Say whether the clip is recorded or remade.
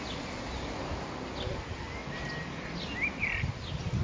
recorded